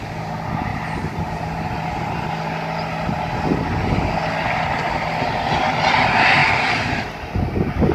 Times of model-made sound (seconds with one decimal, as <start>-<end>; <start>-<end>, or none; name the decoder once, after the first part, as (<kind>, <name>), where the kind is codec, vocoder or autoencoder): none